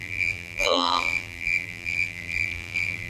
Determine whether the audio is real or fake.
fake